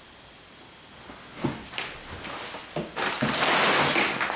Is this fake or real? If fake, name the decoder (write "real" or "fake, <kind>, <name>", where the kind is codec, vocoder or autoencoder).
real